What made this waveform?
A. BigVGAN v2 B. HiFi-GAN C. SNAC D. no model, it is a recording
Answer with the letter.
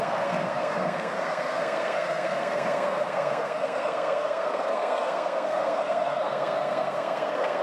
C